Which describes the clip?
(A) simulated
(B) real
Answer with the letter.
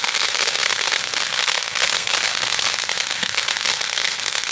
A